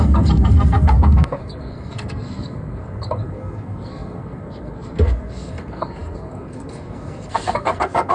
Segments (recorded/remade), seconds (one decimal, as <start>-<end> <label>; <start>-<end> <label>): 0.0-8.1 remade